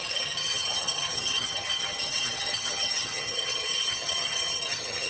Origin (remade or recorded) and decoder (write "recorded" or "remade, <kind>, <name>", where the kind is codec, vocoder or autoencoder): remade, vocoder, HiFi-GAN